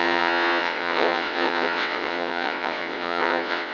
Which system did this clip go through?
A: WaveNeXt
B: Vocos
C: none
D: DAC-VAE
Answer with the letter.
A